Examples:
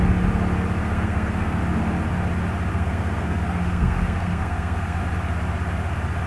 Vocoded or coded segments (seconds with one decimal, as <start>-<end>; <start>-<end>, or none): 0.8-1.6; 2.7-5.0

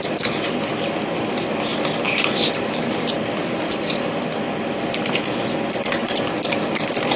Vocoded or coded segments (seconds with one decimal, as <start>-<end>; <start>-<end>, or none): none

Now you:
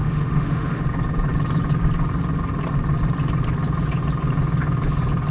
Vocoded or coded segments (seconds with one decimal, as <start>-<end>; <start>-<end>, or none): 0.0-0.8